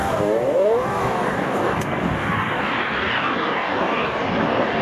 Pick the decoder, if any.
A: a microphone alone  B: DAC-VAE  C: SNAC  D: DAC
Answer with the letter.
D